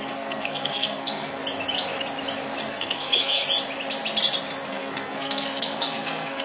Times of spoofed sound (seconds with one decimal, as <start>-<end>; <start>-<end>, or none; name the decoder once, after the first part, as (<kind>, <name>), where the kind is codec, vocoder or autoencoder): 0.0-1.4 (codec, SNAC); 2.7-3.4; 4.7-6.4